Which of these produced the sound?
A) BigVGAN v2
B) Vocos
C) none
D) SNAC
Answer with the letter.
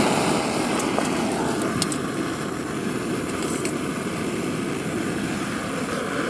C